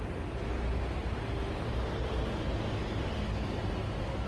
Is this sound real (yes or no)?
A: yes